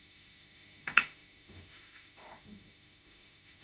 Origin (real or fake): fake